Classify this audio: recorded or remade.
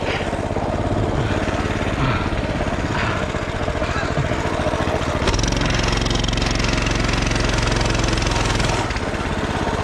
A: recorded